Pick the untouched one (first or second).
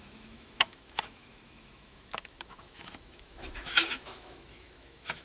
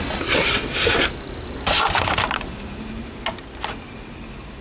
second